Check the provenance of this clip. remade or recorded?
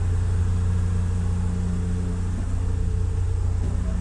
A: recorded